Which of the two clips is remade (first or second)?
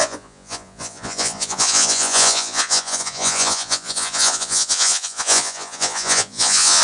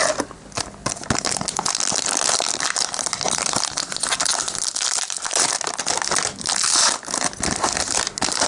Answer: first